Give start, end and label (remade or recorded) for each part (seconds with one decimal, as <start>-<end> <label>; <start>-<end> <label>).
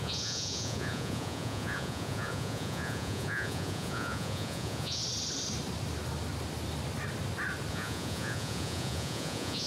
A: 0.0-5.0 remade; 5.0-7.7 recorded; 7.7-9.7 remade